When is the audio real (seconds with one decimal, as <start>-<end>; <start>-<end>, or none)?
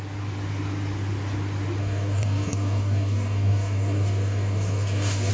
0.0-1.8